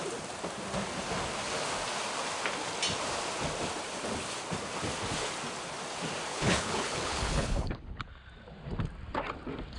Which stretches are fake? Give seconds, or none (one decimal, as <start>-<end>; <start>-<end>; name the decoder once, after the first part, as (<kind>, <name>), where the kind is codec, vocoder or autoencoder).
6.3-8.1 (codec, HILCodec)